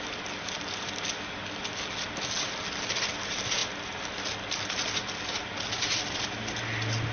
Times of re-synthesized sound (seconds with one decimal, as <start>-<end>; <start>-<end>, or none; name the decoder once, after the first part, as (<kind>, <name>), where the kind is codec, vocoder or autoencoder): none

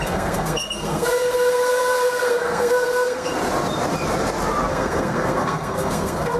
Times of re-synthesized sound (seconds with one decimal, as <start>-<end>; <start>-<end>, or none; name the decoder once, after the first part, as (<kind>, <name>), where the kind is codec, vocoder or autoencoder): 0.0-3.3 (codec, SNAC); 4.7-6.4

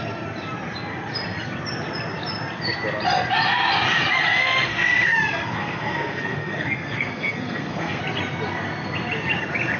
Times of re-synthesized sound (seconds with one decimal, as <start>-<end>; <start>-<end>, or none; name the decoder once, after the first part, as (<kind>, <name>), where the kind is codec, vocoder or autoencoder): 4.4-8.0 (codec, SNAC)

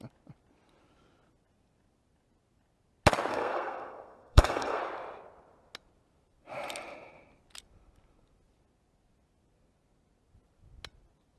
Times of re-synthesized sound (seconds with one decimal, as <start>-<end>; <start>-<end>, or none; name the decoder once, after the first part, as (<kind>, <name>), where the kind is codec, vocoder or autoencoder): 3.3-4.8 (codec, SNAC)

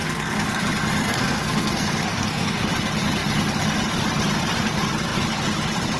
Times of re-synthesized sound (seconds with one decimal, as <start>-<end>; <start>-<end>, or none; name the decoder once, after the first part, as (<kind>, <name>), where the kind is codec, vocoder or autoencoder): 0.0-0.6 (codec, SNAC); 1.0-2.7

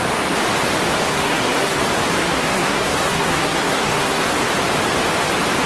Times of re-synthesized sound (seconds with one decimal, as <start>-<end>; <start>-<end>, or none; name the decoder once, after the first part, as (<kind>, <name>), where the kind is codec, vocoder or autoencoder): 1.1-1.8 (codec, SNAC); 2.2-4.2

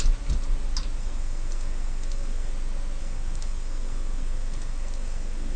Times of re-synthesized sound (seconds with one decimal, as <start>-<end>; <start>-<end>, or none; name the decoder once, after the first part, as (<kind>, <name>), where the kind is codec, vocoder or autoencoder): 1.0-2.5 (codec, SNAC); 3.0-5.6

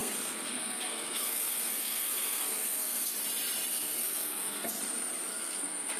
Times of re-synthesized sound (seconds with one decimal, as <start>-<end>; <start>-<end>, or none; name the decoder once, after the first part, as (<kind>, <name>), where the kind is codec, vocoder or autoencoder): 0.0-3.1 (codec, SNAC); 3.7-4.7; 5.3-6.0